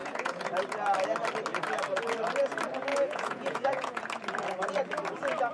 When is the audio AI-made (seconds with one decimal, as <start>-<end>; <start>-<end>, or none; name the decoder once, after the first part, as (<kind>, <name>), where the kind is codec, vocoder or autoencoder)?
0.0-0.5 (vocoder, Vocos); 2.9-4.0